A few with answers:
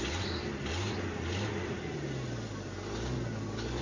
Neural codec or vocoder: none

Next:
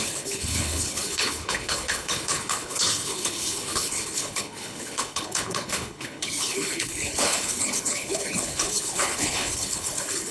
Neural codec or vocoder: codec, HILCodec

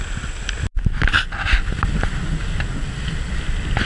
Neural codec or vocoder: none